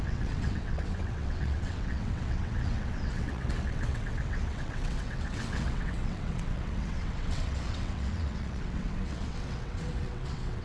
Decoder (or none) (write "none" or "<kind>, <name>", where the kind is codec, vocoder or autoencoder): vocoder, WaveNeXt